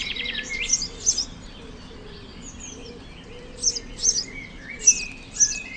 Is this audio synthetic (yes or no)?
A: no